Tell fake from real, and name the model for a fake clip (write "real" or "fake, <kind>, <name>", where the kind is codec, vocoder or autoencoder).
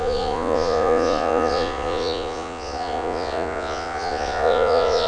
fake, vocoder, Vocos